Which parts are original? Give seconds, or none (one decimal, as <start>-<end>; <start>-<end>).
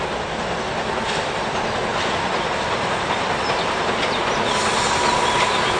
0.0-5.8